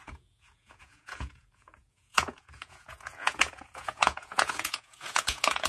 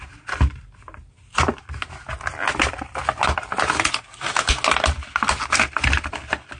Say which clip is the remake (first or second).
first